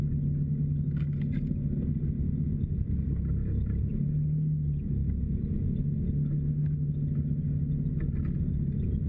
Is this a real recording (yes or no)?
yes